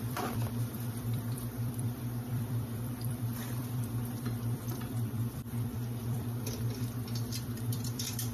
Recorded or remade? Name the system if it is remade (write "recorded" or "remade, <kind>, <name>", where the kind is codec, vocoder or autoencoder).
remade, vocoder, BigVGAN v2